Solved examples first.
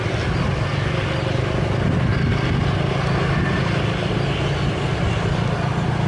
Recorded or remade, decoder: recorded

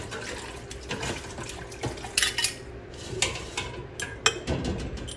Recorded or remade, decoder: recorded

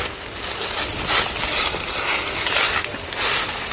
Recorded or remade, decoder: recorded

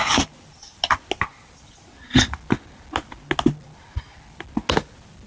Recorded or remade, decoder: recorded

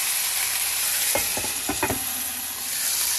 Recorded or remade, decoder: recorded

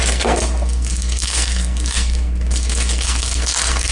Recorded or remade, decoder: remade, codec, SNAC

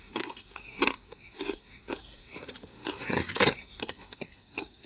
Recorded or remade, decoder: remade, codec, SNAC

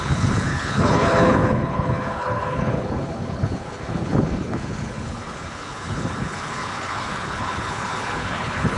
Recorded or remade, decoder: remade, codec, HILCodec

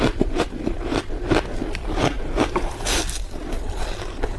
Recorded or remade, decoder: recorded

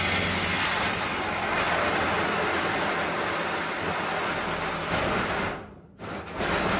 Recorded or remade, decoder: recorded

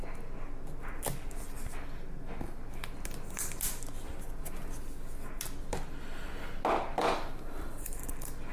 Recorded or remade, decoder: recorded